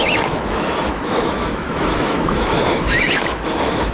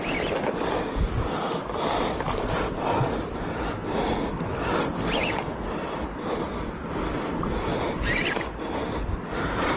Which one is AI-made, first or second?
first